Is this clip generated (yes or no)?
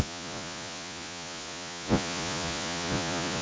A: yes